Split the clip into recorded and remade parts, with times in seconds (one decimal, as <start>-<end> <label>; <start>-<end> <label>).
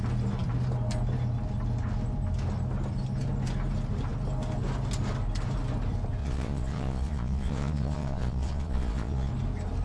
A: 0.0-6.2 recorded; 6.2-9.3 remade; 9.3-9.8 recorded